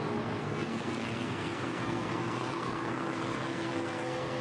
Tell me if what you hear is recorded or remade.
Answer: remade